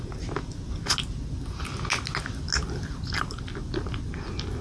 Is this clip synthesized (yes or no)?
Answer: no